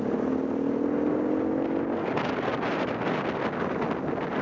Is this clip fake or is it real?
real